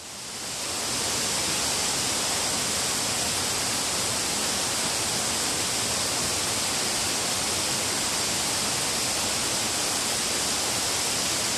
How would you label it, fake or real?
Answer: real